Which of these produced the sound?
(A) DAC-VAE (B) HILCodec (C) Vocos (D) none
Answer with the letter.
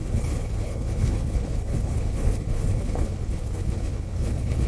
B